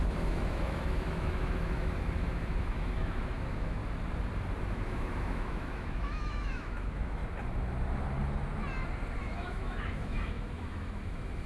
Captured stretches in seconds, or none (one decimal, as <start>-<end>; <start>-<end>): 3.8-4.7; 7.2-9.2